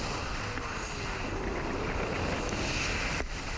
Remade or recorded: recorded